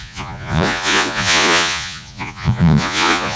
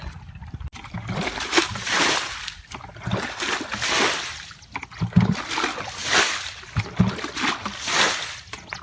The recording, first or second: second